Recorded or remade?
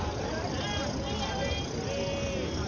recorded